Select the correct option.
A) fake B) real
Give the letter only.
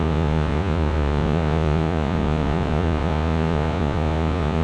A